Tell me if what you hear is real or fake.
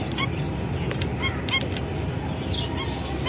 real